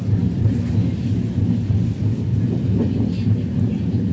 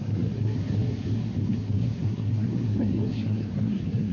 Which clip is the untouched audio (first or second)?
first